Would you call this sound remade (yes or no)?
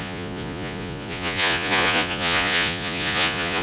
yes